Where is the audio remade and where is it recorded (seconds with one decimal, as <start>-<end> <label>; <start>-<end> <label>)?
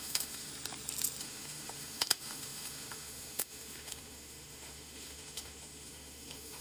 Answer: 0.0-0.5 remade; 0.5-1.2 recorded; 1.2-6.6 remade